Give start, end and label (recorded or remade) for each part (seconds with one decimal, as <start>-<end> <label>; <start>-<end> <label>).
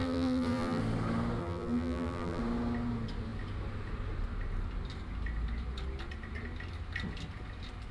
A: 0.0-0.8 remade; 0.8-1.4 recorded; 1.4-2.4 remade; 2.4-7.9 recorded